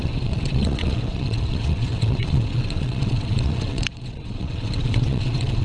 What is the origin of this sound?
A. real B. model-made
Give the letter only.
B